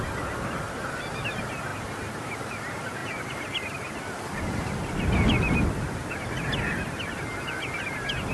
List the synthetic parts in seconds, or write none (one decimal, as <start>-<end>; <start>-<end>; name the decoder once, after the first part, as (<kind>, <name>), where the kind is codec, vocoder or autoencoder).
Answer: 3.0-4.0 (vocoder, BigVGAN v2); 6.0-6.5